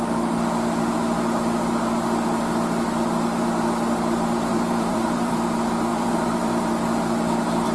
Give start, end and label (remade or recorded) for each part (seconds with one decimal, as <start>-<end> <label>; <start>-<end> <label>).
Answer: 0.0-4.5 recorded; 4.5-5.3 remade; 5.3-5.9 recorded; 5.9-6.7 remade; 6.7-7.7 recorded